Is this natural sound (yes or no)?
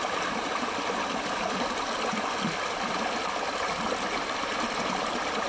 yes